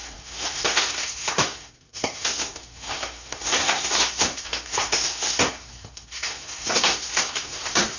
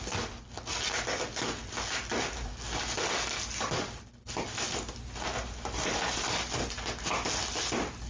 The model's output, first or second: first